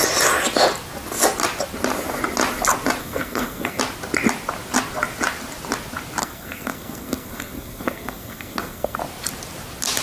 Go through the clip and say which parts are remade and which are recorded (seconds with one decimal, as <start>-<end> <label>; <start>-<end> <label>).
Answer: 0.0-3.0 recorded; 3.0-3.8 remade; 3.8-6.2 recorded; 6.2-9.0 remade; 9.0-10.0 recorded